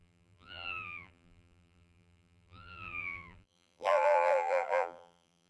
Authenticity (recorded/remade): remade